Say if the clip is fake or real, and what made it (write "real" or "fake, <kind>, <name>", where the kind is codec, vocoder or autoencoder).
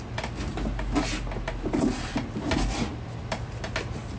real